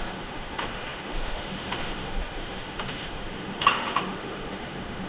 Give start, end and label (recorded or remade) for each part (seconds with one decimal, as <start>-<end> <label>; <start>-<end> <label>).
0.0-5.1 remade